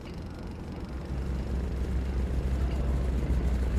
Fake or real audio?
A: real